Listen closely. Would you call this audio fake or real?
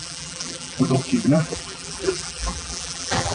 fake